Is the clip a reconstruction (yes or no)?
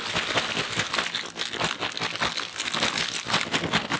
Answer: no